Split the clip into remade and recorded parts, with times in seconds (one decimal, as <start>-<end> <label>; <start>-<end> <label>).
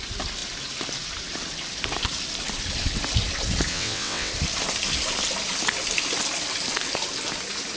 0.0-3.7 recorded; 3.7-4.3 remade; 4.3-7.8 recorded